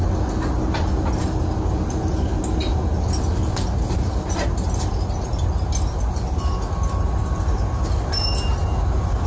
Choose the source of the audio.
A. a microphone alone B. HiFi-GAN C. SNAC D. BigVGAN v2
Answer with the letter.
A